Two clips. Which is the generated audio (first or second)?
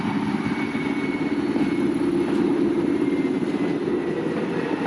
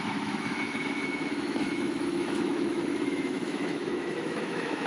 second